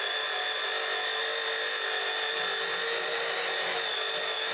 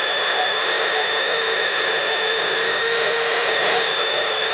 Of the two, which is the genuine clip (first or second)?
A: first